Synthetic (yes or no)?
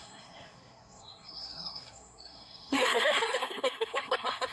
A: yes